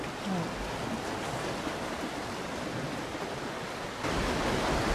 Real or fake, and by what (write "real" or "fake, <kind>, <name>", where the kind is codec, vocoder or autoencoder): real